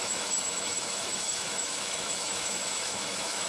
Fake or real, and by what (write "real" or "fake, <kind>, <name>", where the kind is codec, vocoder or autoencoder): fake, autoencoder, DAC-VAE